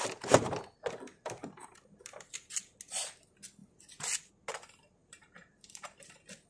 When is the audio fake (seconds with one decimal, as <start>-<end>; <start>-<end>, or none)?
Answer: 1.1-2.0; 5.0-6.1